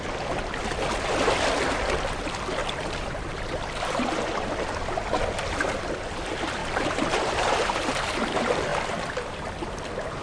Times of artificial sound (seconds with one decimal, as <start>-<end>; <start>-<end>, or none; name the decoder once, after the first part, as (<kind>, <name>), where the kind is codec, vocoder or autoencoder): 2.6-3.6 (vocoder, BigVGAN v2); 6.6-7.7; 8.7-9.5